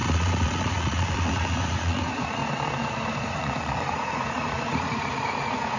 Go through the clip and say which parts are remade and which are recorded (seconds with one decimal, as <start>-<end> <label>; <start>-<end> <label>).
0.0-2.4 remade; 2.4-3.2 recorded; 3.2-5.8 remade